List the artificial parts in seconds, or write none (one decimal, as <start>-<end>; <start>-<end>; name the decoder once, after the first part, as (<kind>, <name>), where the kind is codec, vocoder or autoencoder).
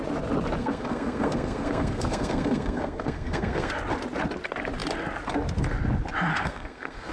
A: 0.6-3.7 (codec, SNAC); 6.3-7.1